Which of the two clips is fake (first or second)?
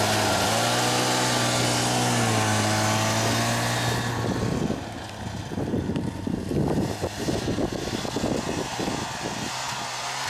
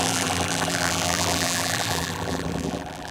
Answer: second